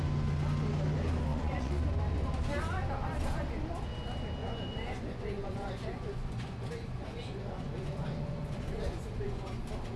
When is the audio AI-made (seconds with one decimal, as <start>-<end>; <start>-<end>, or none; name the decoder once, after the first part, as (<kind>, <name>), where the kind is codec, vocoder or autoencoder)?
1.3-1.8 (vocoder, Vocos); 4.4-9.6